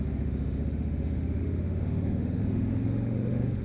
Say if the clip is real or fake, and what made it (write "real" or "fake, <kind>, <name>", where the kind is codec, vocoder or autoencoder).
fake, autoencoder, DAC-VAE